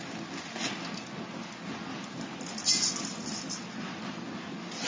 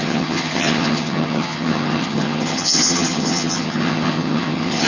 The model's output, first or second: second